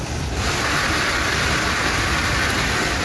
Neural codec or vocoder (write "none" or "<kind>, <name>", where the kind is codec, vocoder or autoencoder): none